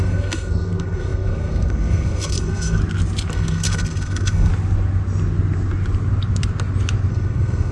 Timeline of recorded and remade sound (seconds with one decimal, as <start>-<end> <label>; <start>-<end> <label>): 0.0-2.8 remade; 2.8-3.3 recorded; 3.3-4.5 remade; 4.5-7.1 recorded; 7.1-7.7 remade